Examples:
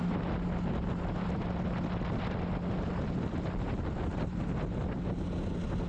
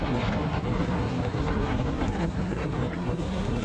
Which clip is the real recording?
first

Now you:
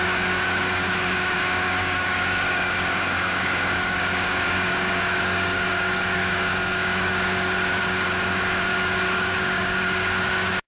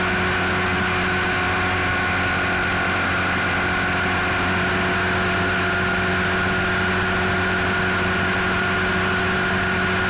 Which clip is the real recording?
second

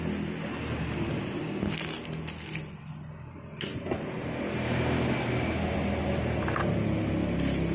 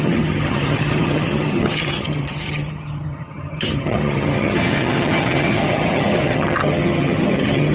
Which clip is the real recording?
first